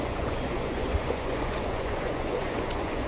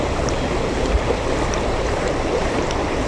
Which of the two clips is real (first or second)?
second